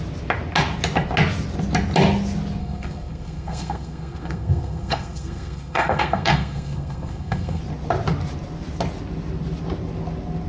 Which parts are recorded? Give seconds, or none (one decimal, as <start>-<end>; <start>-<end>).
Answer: 0.0-2.6; 7.6-10.5